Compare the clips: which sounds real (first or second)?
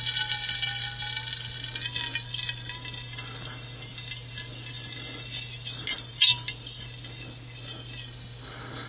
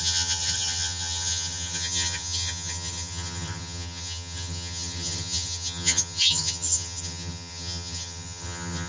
first